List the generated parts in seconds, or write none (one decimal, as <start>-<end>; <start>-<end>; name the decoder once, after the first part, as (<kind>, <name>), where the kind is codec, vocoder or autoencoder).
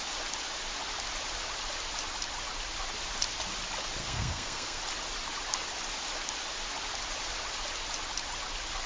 4.0-4.8 (codec, SNAC)